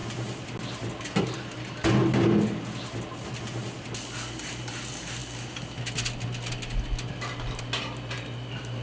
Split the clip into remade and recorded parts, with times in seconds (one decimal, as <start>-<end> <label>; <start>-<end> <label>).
0.0-8.8 recorded